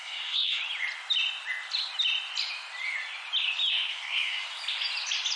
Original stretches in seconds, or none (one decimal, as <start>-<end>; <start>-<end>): 0.6-3.7; 4.4-5.4